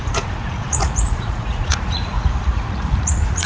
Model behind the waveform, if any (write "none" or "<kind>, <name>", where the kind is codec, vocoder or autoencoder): vocoder, Vocos